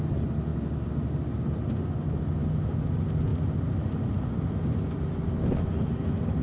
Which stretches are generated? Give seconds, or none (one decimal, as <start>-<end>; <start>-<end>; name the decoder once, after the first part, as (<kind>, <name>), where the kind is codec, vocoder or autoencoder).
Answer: none